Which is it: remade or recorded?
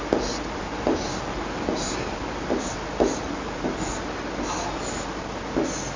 recorded